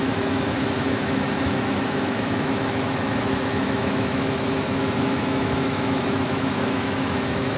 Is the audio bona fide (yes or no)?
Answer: no